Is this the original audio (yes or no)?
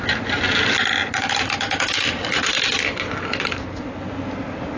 yes